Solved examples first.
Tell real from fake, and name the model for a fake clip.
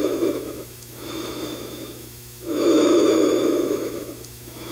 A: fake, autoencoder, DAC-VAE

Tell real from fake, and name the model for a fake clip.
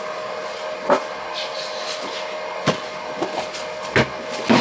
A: real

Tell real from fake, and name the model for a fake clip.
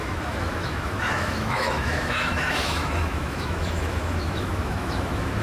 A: fake, autoencoder, DAC-VAE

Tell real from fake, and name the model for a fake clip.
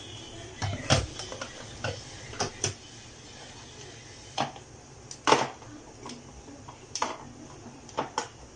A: real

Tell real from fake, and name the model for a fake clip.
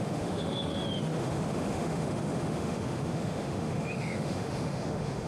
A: fake, autoencoder, DAC-VAE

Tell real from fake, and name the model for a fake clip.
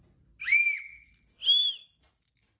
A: real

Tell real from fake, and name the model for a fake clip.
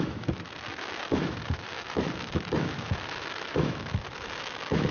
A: fake, autoencoder, DAC-VAE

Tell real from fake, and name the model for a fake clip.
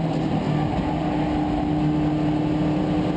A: real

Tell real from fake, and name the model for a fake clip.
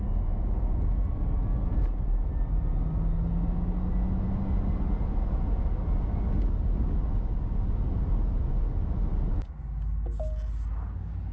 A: real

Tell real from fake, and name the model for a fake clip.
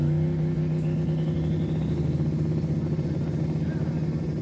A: real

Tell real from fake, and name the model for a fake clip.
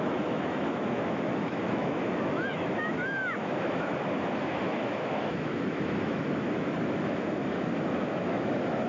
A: fake, autoencoder, DAC-VAE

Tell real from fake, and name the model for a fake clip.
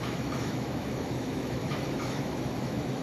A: fake, autoencoder, DAC-VAE